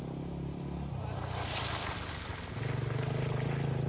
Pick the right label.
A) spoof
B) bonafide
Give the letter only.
B